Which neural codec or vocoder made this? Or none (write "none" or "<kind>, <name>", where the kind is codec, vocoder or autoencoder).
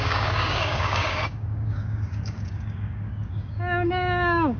codec, DAC